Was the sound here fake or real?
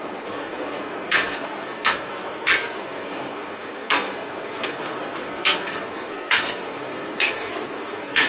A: fake